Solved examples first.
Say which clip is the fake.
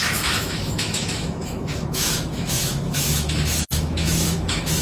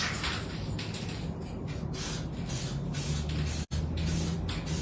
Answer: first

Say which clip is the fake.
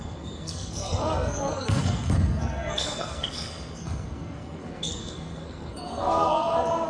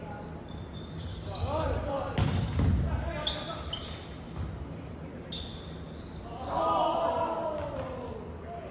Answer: first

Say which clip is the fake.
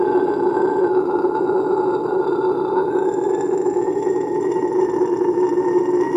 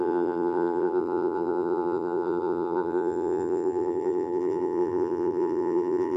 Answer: second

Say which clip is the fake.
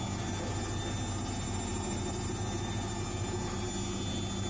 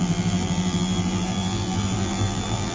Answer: second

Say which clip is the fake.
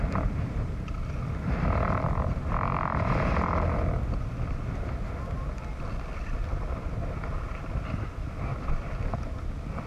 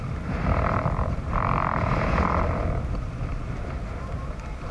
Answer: second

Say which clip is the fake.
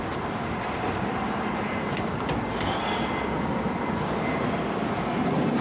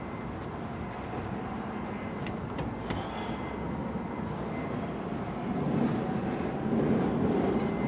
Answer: first